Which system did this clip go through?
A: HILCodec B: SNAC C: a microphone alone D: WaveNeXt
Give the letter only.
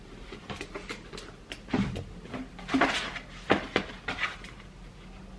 C